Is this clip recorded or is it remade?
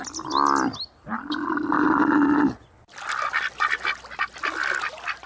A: recorded